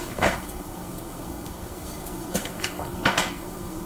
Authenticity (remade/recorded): remade